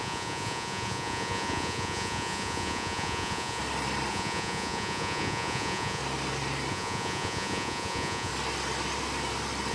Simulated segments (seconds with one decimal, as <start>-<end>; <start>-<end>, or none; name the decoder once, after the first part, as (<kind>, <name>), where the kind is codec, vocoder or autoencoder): 0.0-3.6 (vocoder, Vocos); 4.1-6.0; 6.7-8.3